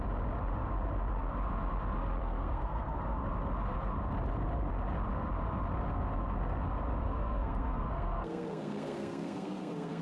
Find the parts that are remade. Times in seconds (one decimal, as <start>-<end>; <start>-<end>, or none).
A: 2.2-3.0; 7.0-10.0